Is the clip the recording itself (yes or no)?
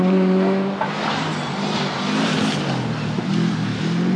yes